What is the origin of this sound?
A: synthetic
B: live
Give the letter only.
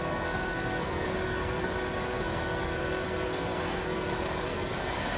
A